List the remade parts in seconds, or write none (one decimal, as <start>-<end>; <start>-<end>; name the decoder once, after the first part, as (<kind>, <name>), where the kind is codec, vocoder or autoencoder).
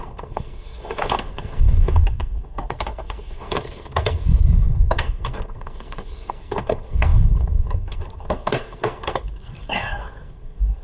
0.0-10.8 (codec, SNAC)